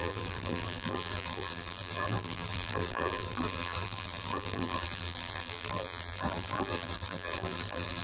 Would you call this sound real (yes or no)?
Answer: no